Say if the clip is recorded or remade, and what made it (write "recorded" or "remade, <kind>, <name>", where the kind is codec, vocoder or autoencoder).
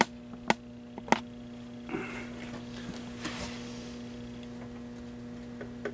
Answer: recorded